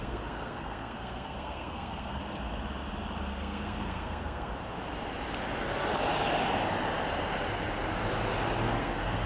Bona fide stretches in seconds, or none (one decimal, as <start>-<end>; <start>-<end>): 2.2-3.3; 4.5-8.8